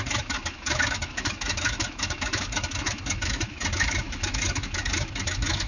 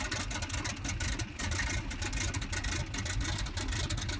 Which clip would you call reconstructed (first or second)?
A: first